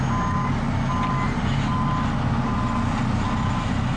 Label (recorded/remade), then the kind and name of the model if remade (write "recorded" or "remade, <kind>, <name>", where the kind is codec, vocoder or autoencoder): recorded